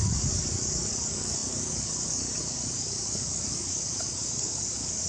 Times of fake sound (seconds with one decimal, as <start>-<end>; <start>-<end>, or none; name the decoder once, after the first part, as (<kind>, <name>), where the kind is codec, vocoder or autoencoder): 0.0-5.1 (codec, DAC)